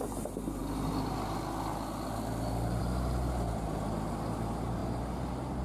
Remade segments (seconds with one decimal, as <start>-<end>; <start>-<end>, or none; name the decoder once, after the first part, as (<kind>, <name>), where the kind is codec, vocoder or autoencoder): none